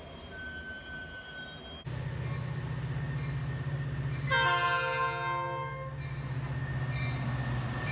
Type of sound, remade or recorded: recorded